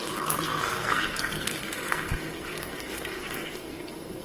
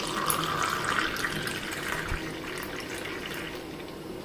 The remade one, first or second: first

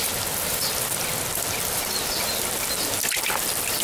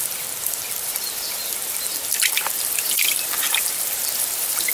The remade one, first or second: second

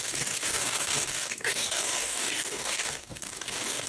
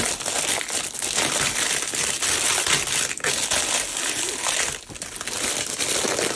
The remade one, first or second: first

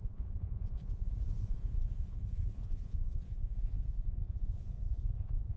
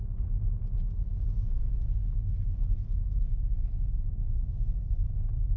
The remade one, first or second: first